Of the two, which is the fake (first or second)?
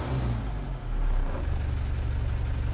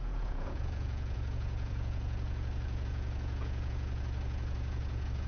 second